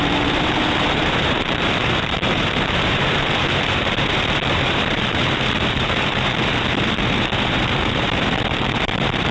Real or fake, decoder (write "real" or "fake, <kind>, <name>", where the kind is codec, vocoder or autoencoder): fake, vocoder, BigVGAN v2